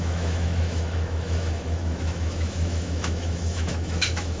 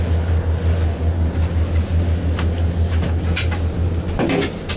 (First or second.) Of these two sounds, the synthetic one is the first